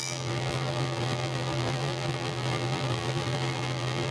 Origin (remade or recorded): remade